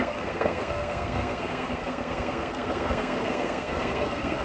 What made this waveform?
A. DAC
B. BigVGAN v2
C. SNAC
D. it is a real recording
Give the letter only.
C